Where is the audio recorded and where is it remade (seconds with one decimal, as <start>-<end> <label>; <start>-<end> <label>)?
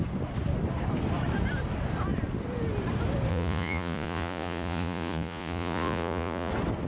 0.0-3.3 recorded; 3.3-6.5 remade; 6.5-6.9 recorded